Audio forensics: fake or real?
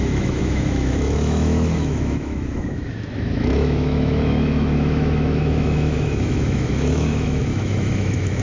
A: fake